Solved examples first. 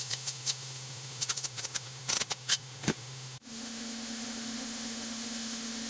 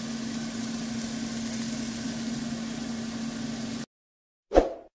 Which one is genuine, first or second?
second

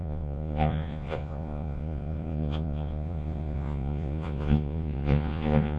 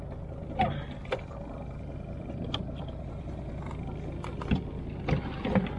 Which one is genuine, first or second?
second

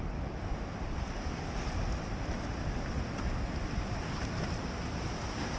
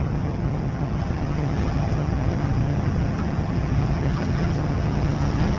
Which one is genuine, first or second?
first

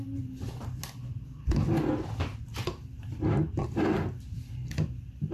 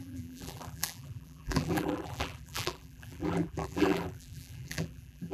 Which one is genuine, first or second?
first